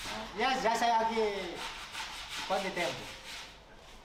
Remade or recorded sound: recorded